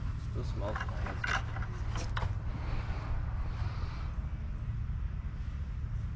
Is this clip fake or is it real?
real